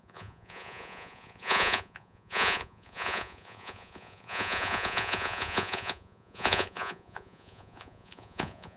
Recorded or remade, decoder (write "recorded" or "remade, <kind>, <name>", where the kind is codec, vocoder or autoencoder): remade, vocoder, Vocos